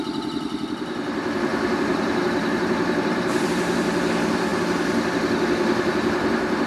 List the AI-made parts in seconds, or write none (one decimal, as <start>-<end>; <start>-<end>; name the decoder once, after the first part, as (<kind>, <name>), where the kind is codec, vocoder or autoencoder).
1.5-3.5 (vocoder, BigVGAN v2)